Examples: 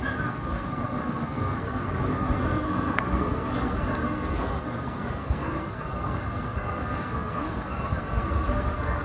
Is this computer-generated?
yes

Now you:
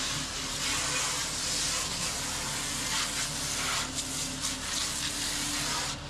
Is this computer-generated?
no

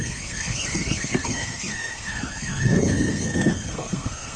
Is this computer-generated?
yes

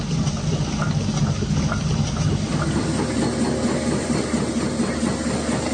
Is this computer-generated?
no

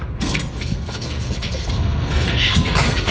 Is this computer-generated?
yes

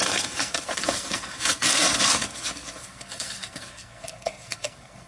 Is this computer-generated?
yes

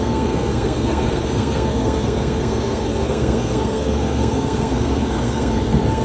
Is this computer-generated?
yes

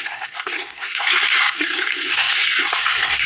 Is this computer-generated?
yes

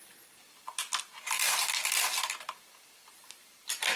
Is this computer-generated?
no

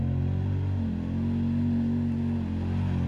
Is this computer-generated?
no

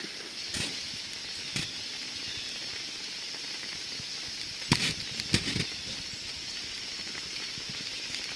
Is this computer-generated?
no